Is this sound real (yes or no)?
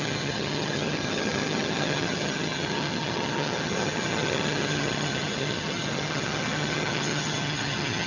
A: no